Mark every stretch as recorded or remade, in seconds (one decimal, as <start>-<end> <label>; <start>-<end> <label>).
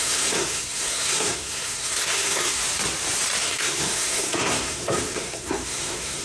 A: 0.0-2.6 remade; 2.6-3.4 recorded; 3.4-6.2 remade